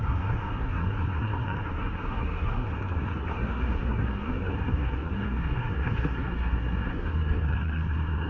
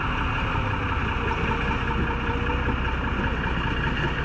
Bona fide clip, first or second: second